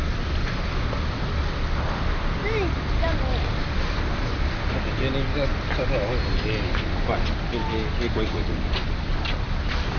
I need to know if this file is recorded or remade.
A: recorded